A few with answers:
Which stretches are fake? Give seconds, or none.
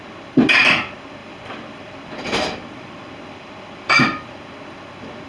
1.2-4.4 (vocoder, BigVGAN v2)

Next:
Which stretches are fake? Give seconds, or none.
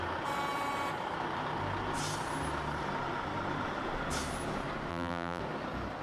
4.9-5.4 (vocoder, BigVGAN v2)